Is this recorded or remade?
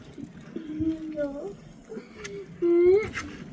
recorded